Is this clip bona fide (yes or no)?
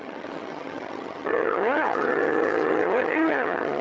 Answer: no